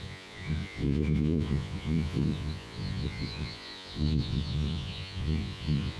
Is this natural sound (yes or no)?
no